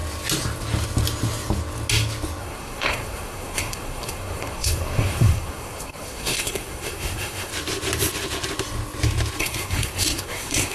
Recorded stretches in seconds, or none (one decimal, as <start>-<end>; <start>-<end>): 0.0-2.4; 7.5-9.4